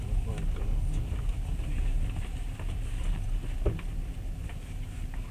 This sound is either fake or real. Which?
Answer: real